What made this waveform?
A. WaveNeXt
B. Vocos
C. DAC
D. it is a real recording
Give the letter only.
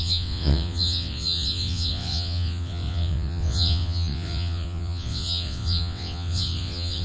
A